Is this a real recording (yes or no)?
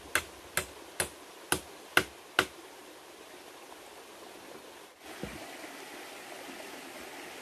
yes